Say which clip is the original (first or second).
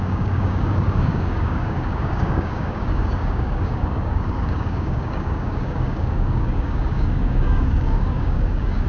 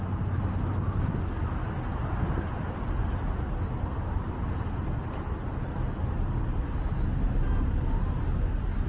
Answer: second